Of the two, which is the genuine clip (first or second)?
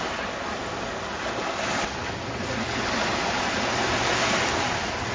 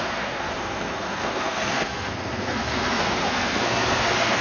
first